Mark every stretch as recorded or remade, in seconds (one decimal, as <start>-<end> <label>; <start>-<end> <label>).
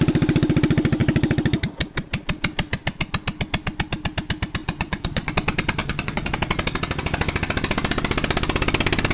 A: 0.0-4.6 recorded; 4.6-5.3 remade; 5.3-5.8 recorded; 5.8-6.3 remade; 6.3-9.1 recorded